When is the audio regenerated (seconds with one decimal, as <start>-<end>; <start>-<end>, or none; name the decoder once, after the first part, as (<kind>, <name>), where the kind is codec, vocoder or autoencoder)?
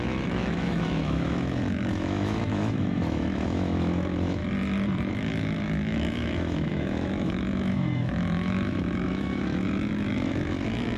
0.0-4.4 (autoencoder, DAC-VAE); 5.1-11.0